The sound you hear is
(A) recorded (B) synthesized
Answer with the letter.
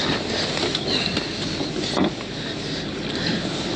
A